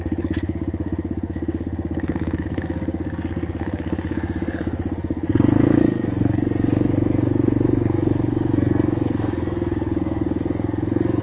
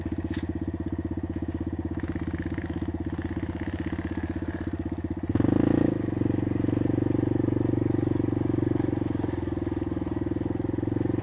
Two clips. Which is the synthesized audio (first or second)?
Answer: first